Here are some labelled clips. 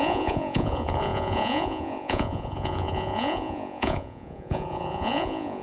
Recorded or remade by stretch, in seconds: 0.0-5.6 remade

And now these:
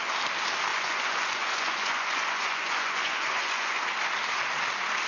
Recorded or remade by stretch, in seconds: 0.0-0.7 recorded; 0.7-3.8 remade; 3.8-5.1 recorded

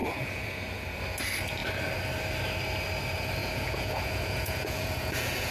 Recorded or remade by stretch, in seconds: 0.0-1.0 remade; 1.0-3.4 recorded; 3.4-5.5 remade

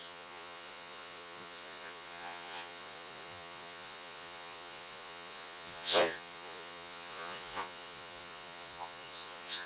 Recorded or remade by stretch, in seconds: 0.0-9.7 remade

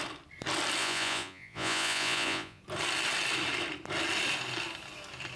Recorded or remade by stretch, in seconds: 0.0-0.8 recorded; 0.8-2.6 remade; 2.6-5.4 recorded